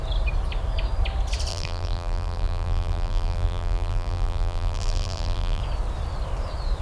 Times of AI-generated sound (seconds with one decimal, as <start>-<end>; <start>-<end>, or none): 1.5-5.6